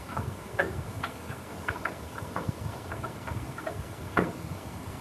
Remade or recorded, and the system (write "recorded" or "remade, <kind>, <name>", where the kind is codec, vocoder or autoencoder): remade, codec, SNAC